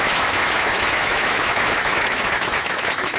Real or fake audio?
fake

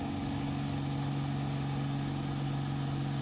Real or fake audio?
real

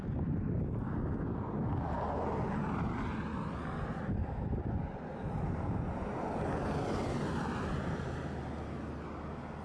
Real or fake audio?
real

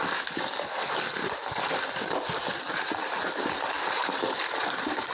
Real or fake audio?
fake